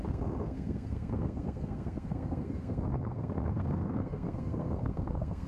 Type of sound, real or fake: fake